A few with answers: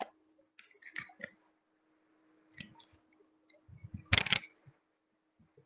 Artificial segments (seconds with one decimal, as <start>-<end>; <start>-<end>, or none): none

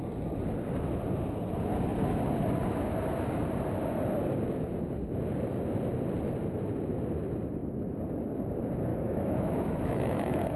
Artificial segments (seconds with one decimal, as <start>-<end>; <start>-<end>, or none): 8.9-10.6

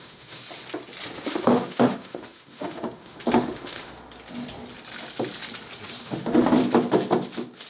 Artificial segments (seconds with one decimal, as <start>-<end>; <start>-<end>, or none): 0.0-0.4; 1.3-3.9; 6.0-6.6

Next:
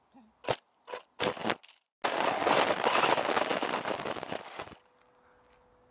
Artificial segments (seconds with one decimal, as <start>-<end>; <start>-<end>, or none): none